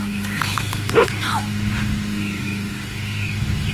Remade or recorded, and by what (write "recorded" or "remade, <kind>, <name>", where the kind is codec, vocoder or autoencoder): remade, autoencoder, DAC-VAE